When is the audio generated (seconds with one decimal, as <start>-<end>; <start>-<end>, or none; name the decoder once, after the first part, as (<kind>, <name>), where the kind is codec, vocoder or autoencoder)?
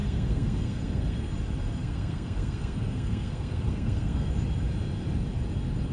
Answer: 0.0-1.3 (codec, SNAC); 1.8-4.3